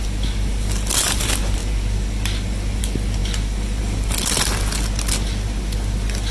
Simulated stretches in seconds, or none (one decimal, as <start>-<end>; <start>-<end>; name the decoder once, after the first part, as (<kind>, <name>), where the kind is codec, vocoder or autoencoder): none